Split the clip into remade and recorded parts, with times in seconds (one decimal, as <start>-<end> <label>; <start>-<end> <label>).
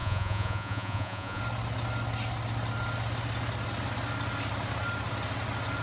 0.0-1.4 remade; 1.4-5.8 recorded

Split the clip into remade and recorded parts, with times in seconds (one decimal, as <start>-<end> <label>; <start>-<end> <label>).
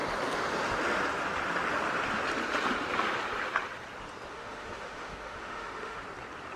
0.0-4.3 recorded; 4.3-6.0 remade; 6.0-6.6 recorded